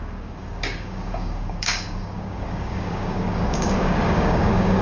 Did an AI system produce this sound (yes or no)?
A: yes